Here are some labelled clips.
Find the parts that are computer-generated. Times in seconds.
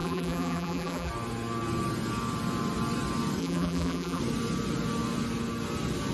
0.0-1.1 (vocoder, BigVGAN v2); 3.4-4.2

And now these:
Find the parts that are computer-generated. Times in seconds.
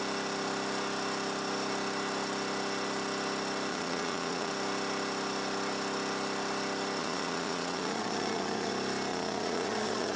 3.7-4.5 (vocoder, Vocos); 7.0-8.7; 9.1-10.2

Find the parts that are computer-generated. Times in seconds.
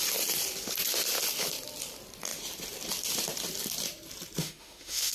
4.4-5.1 (autoencoder, DAC-VAE)